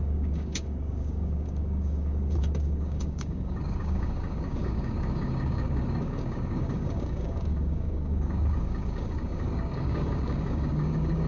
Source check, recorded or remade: remade